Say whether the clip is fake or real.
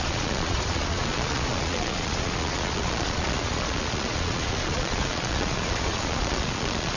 fake